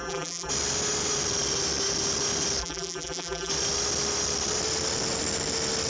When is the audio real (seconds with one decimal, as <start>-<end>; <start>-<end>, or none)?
0.5-2.6; 3.5-5.9